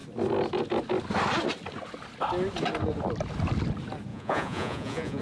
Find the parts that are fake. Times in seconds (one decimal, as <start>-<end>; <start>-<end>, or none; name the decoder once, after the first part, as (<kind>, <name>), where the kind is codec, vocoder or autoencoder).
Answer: 4.1-5.2 (vocoder, Vocos)

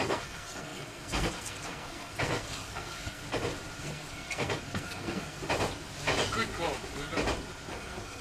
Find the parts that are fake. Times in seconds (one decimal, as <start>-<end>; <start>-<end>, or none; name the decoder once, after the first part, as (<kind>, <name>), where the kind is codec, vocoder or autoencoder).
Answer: 0.0-3.2 (codec, SNAC); 3.8-5.4; 7.7-8.2

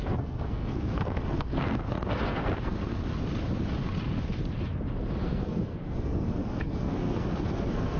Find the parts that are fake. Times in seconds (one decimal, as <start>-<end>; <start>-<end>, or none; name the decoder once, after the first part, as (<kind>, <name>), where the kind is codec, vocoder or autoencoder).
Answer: 0.0-2.8 (codec, SNAC); 5.2-8.0

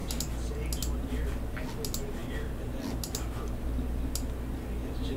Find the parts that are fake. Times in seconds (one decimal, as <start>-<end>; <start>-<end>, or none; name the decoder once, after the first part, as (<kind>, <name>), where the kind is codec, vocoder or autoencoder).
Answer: none

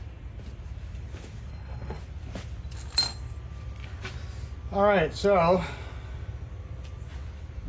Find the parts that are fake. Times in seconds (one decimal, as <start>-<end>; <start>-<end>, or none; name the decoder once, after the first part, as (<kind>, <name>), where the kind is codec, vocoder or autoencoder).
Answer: 1.5-2.0 (codec, HILCodec)